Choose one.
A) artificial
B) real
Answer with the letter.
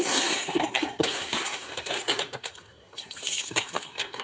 A